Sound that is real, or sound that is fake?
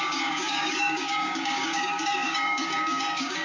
fake